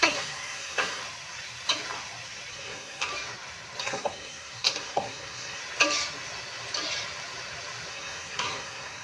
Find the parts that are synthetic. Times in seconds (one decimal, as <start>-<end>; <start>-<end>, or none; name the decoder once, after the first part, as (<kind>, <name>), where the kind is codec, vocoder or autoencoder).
0.0-1.0 (codec, SNAC); 2.5-3.1; 3.8-5.6; 7.9-9.0